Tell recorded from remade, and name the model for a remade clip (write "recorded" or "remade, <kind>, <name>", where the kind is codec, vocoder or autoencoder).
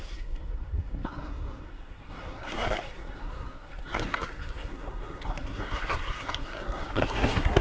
remade, codec, SNAC